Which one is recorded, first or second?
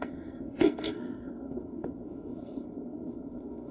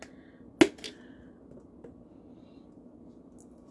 second